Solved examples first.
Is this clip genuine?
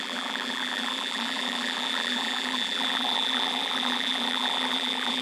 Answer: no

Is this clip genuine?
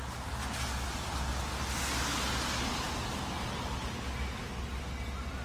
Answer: yes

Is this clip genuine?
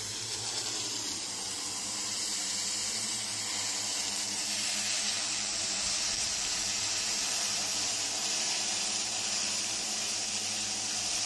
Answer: no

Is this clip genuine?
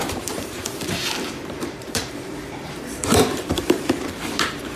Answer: no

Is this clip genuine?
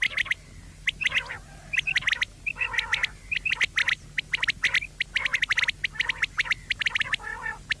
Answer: yes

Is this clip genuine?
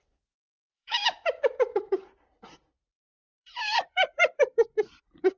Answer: no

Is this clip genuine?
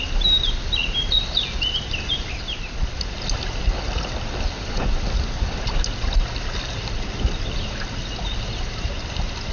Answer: yes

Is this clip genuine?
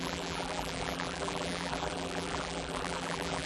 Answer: no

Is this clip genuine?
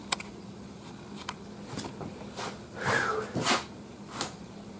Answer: yes